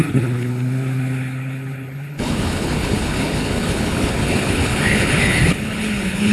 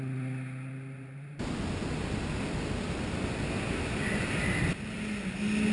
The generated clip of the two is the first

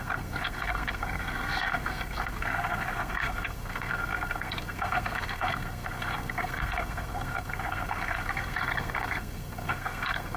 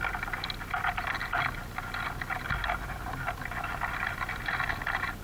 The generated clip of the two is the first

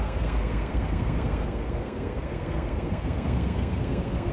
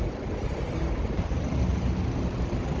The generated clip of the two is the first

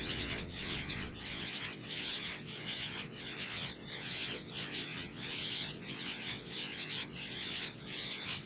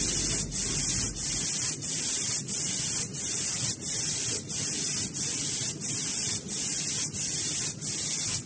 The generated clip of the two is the first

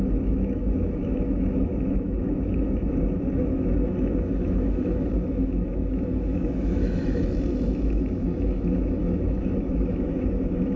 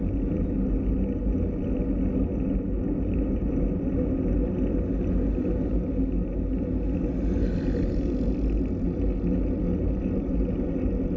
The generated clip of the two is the first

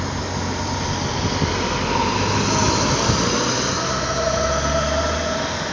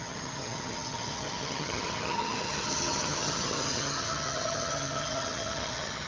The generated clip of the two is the second